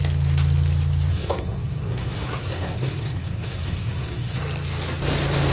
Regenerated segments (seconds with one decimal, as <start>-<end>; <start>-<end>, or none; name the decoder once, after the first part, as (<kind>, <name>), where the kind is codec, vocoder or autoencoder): 1.1-4.4 (codec, SNAC)